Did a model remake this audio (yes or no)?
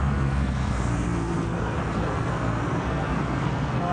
yes